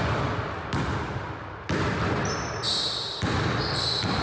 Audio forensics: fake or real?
real